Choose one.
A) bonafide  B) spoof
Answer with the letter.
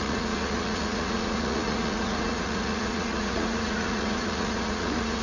B